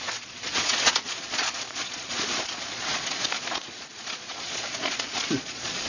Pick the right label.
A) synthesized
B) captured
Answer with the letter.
A